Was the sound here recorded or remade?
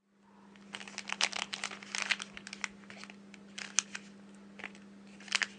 recorded